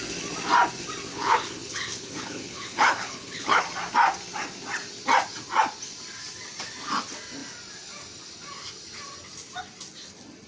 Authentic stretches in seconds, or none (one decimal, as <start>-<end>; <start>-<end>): 0.0-1.1; 3.6-10.5